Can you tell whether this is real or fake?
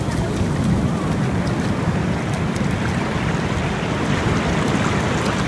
real